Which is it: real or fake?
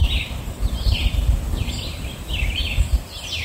real